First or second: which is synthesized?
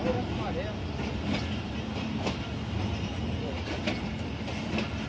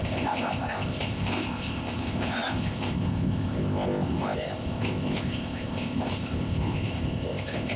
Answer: second